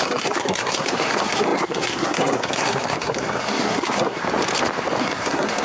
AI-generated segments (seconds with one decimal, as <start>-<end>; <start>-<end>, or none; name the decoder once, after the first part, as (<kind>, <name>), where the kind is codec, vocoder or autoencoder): 0.0-4.2 (codec, SNAC); 5.0-5.6